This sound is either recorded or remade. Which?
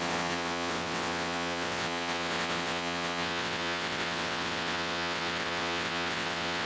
remade